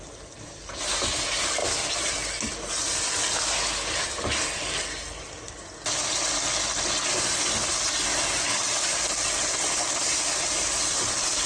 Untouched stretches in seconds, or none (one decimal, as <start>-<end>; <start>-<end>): 0.0-11.5